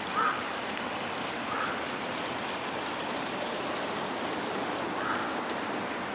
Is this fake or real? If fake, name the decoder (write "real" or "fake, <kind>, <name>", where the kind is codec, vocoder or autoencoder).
real